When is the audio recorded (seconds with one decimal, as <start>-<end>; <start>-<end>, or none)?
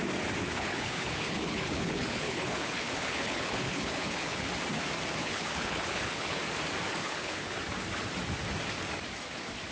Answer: 0.0-0.4; 4.5-5.2; 6.4-7.0; 7.6-9.7